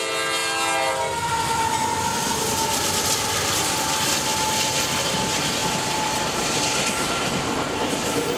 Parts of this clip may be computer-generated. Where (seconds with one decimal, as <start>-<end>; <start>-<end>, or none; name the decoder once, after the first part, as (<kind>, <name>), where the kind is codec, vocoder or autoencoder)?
5.6-6.9 (vocoder, BigVGAN v2)